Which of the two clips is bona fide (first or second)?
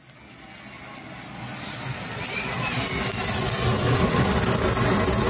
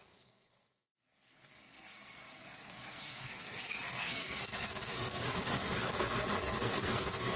first